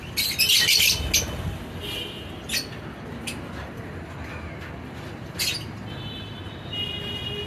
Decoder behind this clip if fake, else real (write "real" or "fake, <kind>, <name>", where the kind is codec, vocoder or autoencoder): real